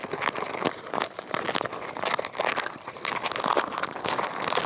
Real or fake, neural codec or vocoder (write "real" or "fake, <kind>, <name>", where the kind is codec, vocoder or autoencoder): real